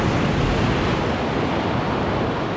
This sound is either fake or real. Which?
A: real